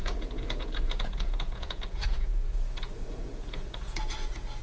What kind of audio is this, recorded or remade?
remade